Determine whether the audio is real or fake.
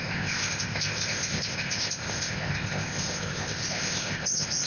fake